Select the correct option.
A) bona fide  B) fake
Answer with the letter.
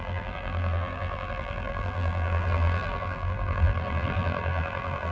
B